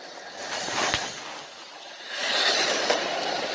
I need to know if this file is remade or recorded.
recorded